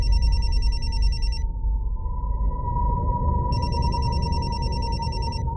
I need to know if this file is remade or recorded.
recorded